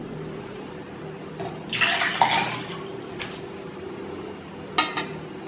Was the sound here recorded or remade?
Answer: recorded